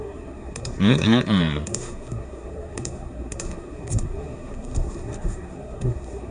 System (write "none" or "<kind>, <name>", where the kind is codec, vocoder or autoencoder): codec, SNAC